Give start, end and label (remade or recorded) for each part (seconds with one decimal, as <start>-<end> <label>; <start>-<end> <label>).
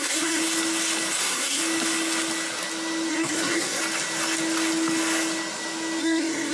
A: 0.0-0.4 remade; 0.4-1.2 recorded; 1.2-1.6 remade; 1.6-3.1 recorded; 3.1-3.8 remade; 3.8-6.0 recorded; 6.0-6.5 remade